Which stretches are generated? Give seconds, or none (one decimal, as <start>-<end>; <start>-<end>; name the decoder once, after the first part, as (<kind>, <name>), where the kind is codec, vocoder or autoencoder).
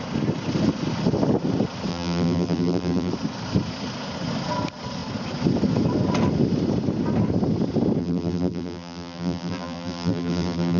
1.9-3.1 (vocoder, BigVGAN v2); 8.0-10.8